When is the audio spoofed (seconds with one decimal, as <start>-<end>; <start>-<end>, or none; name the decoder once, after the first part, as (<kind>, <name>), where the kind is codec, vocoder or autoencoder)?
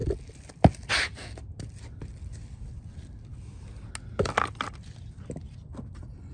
none